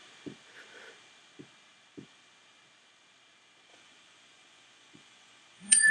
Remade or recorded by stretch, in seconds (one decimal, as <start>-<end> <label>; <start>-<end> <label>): 0.0-3.7 recorded; 3.7-5.9 remade